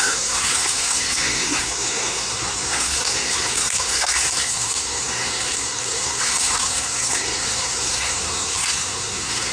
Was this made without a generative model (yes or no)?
no